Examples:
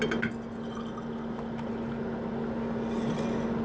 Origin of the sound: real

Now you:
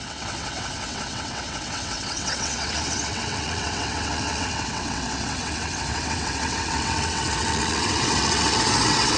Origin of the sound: fake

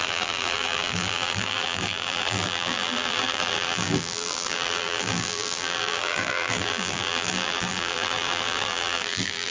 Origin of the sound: fake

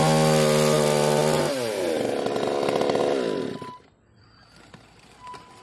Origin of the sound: real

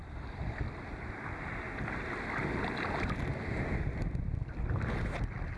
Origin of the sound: real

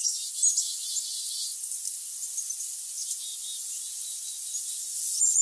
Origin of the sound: real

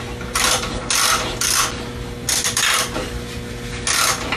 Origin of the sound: real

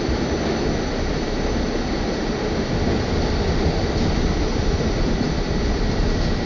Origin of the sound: fake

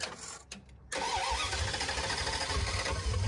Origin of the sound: real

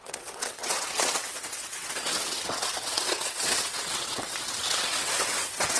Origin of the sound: fake